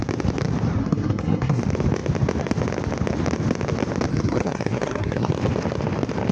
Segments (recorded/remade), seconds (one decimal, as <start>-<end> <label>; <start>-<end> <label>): 0.0-0.8 recorded; 0.8-1.6 remade; 1.6-4.1 recorded; 4.1-5.3 remade; 5.3-6.3 recorded